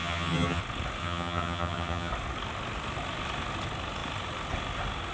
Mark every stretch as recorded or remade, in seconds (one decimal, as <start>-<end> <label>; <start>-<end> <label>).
0.0-0.6 remade; 0.6-1.0 recorded; 1.0-2.1 remade; 2.1-5.1 recorded